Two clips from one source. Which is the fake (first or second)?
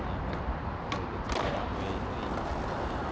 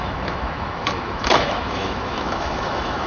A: second